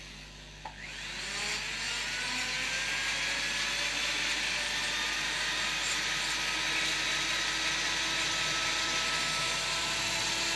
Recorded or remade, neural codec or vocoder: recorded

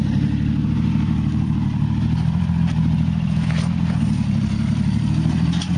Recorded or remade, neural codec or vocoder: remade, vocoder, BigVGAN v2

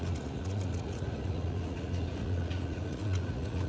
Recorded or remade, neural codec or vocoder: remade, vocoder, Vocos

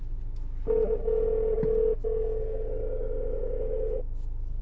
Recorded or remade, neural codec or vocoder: recorded